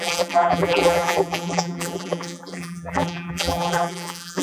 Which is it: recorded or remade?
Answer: remade